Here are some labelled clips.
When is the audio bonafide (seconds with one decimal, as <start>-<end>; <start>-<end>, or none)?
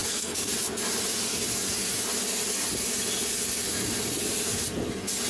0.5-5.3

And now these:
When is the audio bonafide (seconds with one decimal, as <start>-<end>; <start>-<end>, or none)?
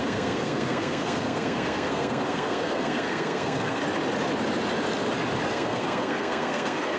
3.8-5.5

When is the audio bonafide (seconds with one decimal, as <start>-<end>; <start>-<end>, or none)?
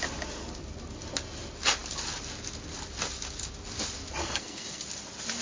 0.0-4.2; 4.8-5.4